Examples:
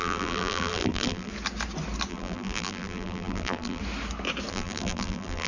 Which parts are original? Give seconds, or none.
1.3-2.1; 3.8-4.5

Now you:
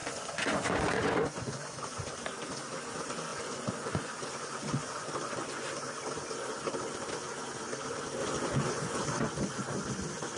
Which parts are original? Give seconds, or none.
1.9-3.3; 5.9-8.2; 9.2-10.4

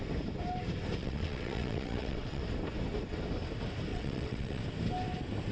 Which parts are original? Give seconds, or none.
0.0-1.0; 2.4-3.9; 4.6-5.5

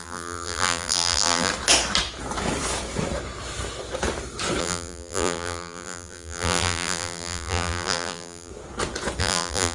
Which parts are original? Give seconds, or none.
1.5-4.6; 8.5-9.2

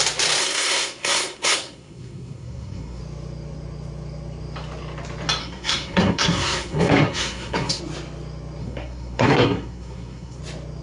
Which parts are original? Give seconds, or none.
0.0-0.4; 3.0-5.4; 7.8-8.6; 10.4-10.8

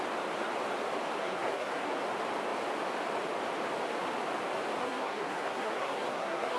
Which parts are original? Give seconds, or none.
0.0-1.2; 2.0-4.8

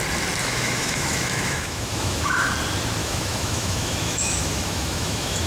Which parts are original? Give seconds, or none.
0.0-0.4; 2.5-3.0